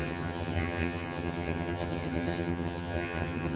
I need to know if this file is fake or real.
fake